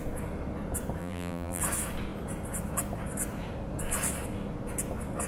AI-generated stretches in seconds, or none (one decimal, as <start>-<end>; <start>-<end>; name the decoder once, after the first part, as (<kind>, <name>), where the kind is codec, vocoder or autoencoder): 1.0-1.6 (vocoder, BigVGAN v2)